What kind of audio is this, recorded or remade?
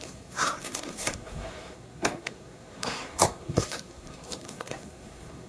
remade